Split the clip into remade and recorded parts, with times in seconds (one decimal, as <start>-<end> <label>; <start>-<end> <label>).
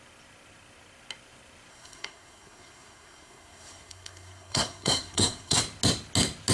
0.0-1.7 recorded; 1.7-5.6 remade; 5.6-6.5 recorded